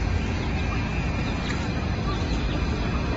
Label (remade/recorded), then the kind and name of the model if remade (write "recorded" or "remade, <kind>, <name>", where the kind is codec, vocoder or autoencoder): recorded